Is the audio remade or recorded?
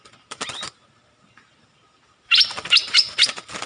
recorded